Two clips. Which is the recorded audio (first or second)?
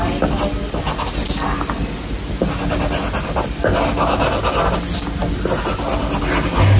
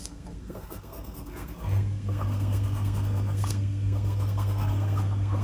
first